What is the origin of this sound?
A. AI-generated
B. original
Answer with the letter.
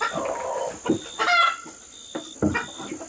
B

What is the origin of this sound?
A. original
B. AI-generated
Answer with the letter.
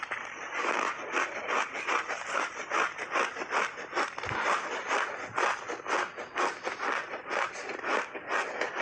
A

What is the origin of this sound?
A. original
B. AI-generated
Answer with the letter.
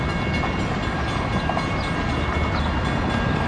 A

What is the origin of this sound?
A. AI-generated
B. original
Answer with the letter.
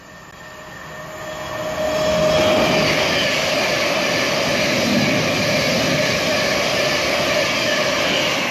B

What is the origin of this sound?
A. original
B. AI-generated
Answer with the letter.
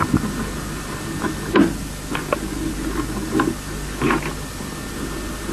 A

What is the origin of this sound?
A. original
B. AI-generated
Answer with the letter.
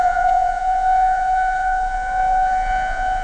B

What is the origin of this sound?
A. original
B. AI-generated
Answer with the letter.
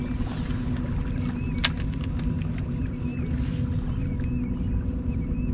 A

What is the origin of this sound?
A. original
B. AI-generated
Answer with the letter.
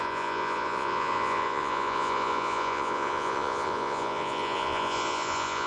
B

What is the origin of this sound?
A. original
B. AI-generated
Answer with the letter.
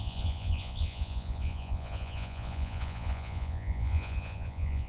B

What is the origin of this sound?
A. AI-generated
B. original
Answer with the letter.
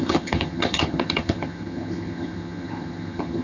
A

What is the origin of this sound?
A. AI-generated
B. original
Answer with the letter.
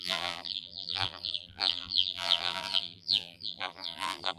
A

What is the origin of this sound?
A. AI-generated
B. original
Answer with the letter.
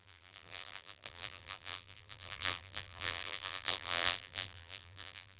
A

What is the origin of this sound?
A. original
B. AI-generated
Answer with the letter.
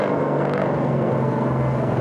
B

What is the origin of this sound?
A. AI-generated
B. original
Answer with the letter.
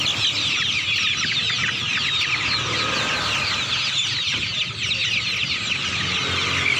B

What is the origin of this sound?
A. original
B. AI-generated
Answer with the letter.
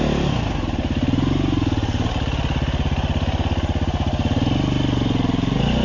A